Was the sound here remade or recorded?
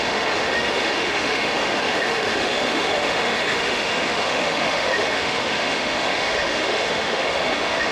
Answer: remade